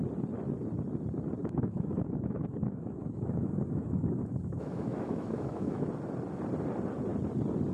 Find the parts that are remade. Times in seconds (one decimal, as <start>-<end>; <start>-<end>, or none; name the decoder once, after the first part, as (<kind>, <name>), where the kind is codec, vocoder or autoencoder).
1.4-5.9 (autoencoder, DAC-VAE)